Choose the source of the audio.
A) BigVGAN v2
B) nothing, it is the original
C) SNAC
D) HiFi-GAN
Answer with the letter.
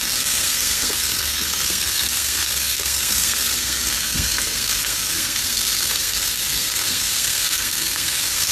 C